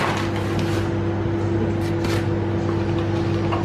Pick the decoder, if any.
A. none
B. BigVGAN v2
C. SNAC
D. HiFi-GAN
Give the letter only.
A